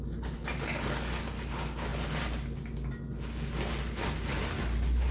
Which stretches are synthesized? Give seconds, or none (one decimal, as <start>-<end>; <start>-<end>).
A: none